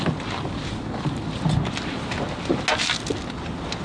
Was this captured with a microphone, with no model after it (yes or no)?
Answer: yes